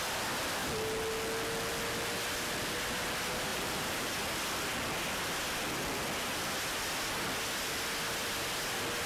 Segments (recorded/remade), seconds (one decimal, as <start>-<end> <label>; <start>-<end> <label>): 0.0-3.5 recorded; 3.5-4.1 remade; 4.1-9.1 recorded

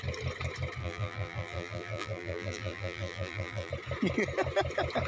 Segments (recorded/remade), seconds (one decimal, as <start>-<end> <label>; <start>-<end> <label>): 0.0-0.8 recorded; 0.8-3.7 remade; 3.7-5.1 recorded

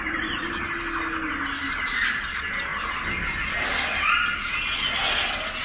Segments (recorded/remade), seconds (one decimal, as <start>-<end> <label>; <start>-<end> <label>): 0.0-5.6 recorded

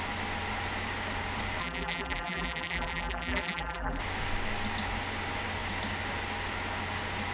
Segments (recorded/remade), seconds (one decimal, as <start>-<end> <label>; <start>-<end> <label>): 0.0-1.6 recorded; 1.6-4.0 remade; 4.0-7.3 recorded

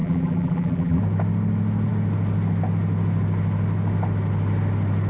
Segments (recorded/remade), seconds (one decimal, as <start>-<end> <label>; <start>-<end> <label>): 0.0-1.0 remade; 1.0-5.1 recorded

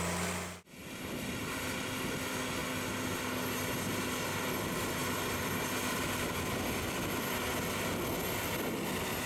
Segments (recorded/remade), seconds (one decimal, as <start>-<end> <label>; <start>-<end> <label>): 0.0-0.8 recorded; 0.8-2.1 remade; 2.1-5.0 recorded; 5.0-5.6 remade; 5.6-9.3 recorded

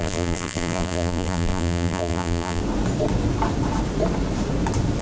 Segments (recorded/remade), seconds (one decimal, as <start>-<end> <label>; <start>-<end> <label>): 0.0-2.6 remade; 2.6-5.0 recorded

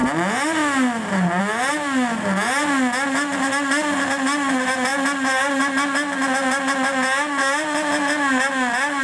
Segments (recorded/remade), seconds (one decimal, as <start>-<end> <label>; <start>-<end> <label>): 0.0-9.0 recorded